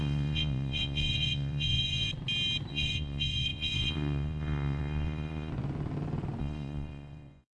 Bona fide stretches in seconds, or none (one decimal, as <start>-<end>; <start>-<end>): 2.1-2.7; 5.5-6.4